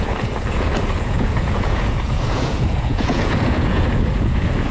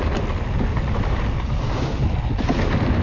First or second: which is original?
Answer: second